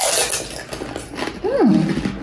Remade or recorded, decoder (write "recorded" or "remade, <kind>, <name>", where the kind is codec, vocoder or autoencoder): recorded